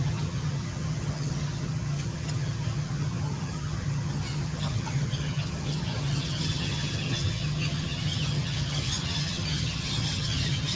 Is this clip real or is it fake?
fake